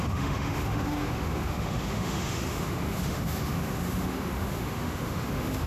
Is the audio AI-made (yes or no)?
yes